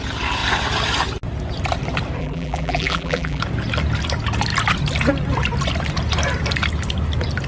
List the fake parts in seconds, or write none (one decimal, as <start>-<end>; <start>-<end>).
2.2-3.4